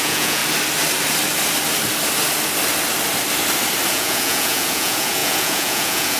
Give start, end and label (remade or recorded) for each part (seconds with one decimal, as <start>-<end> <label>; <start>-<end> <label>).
0.0-0.4 remade; 0.4-3.9 recorded; 3.9-6.2 remade